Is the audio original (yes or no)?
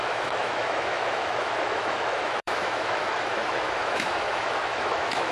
no